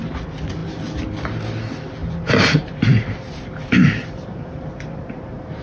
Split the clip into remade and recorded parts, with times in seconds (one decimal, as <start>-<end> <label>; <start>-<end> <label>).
0.0-2.0 recorded; 2.0-5.6 remade